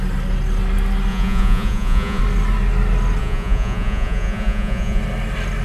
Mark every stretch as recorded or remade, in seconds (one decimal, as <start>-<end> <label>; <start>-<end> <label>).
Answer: 0.0-1.1 recorded; 1.1-2.2 remade; 2.2-3.2 recorded; 3.2-5.0 remade; 5.0-5.6 recorded